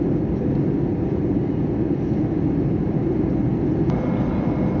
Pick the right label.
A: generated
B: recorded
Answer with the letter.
B